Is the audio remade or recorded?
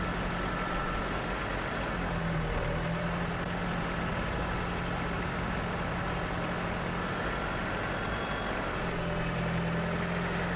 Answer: recorded